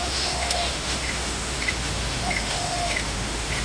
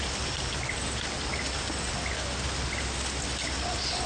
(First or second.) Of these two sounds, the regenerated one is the first